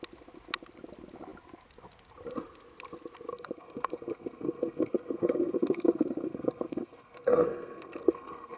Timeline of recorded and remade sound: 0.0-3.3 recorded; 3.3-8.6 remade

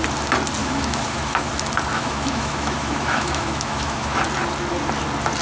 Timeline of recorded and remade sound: 0.0-0.6 recorded; 0.6-1.5 remade; 1.5-1.9 recorded; 1.9-4.2 remade; 4.2-5.4 recorded

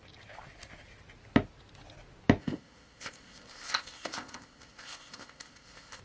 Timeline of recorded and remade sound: 0.0-2.4 recorded; 2.4-6.0 remade

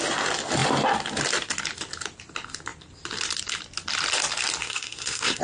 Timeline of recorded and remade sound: 0.0-4.6 recorded; 4.6-5.4 remade

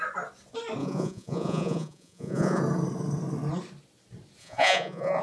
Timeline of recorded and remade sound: 0.0-0.8 recorded; 0.8-2.6 remade; 2.6-4.4 recorded; 4.4-5.2 remade

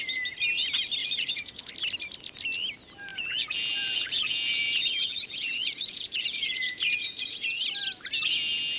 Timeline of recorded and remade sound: 0.0-1.0 recorded; 1.0-1.7 remade; 1.7-3.1 recorded; 3.1-7.6 remade; 7.6-8.8 recorded

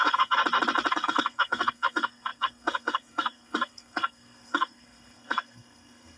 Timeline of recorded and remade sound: 0.0-0.4 remade; 0.4-0.9 recorded; 0.9-6.2 remade

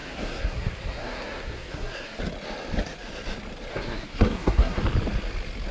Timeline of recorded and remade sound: 0.0-2.2 remade; 2.2-3.7 recorded; 3.7-4.8 remade; 4.8-5.7 recorded